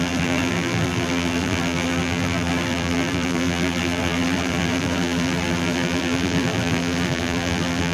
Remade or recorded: remade